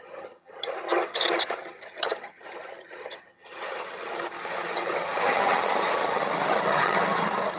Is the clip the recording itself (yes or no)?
no